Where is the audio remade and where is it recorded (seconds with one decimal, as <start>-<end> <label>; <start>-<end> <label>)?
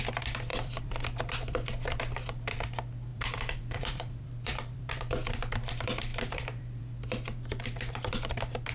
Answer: 0.0-0.5 recorded; 0.5-2.0 remade; 2.0-3.1 recorded; 3.1-5.3 remade; 5.3-6.1 recorded; 6.1-6.8 remade; 6.8-8.7 recorded